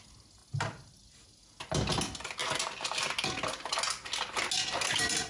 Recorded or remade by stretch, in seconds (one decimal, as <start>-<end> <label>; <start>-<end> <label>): 0.0-5.3 recorded